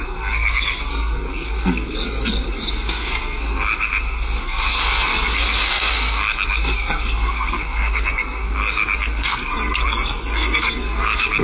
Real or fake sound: fake